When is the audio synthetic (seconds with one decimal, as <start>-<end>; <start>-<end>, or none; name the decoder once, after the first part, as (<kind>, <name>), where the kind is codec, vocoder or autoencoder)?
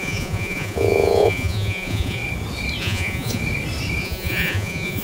0.0-2.2 (vocoder, Vocos); 2.8-3.4; 4.0-5.0